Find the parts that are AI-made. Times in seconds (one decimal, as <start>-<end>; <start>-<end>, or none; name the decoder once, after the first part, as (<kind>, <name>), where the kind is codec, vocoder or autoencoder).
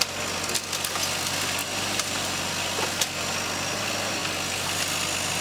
1.6-2.5 (vocoder, BigVGAN v2)